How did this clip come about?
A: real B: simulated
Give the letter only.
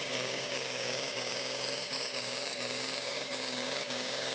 B